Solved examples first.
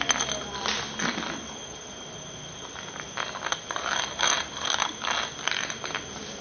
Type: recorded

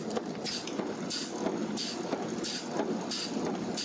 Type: recorded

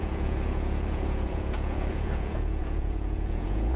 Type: remade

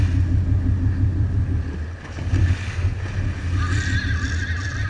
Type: recorded